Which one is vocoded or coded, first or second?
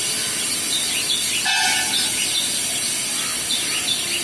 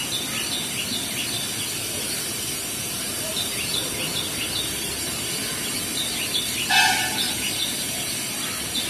second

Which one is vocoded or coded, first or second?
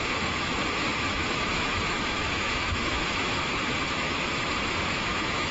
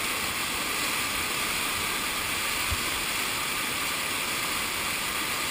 first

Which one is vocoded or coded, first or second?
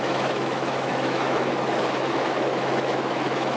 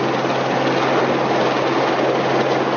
first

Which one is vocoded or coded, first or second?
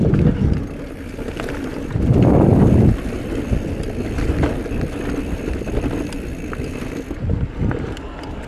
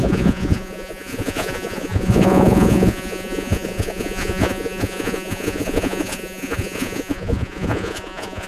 second